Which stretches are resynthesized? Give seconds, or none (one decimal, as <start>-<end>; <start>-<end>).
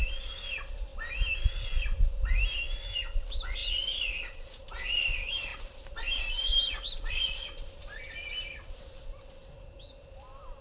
5.5-7.1